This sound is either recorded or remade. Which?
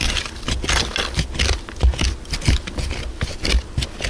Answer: recorded